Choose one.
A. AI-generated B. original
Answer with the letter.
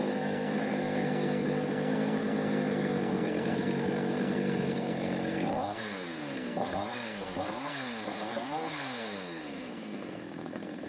A